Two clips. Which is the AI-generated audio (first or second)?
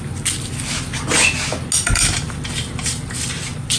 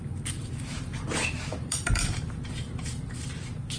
second